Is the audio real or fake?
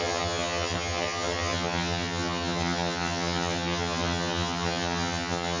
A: fake